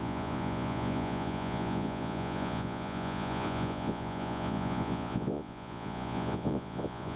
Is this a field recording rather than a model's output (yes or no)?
no